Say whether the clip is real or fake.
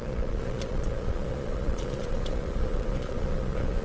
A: fake